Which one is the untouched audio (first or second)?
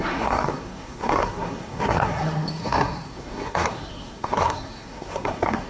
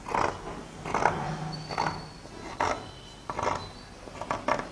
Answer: second